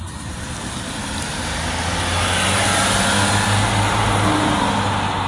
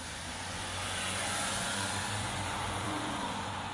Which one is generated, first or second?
second